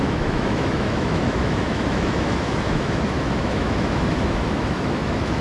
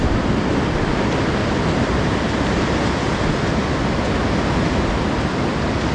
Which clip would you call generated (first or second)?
first